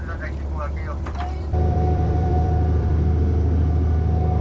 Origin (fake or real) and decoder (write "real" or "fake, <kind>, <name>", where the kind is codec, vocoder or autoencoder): fake, vocoder, BigVGAN v2